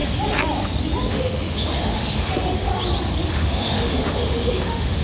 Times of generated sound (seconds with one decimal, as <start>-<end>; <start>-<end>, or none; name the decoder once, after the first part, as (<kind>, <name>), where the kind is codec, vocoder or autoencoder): 1.1-2.7 (autoencoder, DAC-VAE); 3.3-5.0

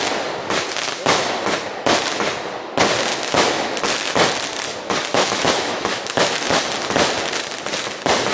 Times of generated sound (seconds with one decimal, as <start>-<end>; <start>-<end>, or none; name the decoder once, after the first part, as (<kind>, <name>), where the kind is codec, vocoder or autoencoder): 3.1-3.8 (autoencoder, DAC-VAE); 5.1-6.6

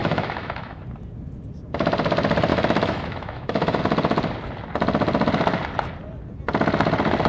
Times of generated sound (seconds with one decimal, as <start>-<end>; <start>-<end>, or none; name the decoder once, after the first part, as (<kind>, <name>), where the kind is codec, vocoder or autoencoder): 0.0-0.8 (autoencoder, DAC-VAE); 2.5-3.8

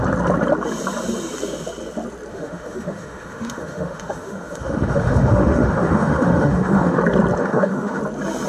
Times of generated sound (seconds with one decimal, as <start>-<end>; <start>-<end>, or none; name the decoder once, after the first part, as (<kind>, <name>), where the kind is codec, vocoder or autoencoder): 2.3-7.0 (autoencoder, DAC-VAE); 7.4-8.0